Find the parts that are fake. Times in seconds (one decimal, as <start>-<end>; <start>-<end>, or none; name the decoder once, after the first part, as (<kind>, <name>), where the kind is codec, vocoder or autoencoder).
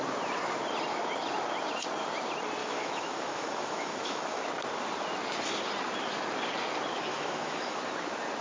2.6-4.4 (autoencoder, DAC-VAE); 7.1-7.8